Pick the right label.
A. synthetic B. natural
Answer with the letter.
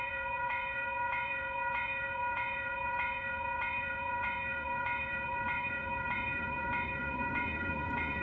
A